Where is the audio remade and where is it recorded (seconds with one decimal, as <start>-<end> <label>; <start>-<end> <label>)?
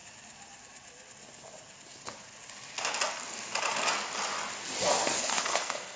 0.0-5.0 recorded; 5.0-6.0 remade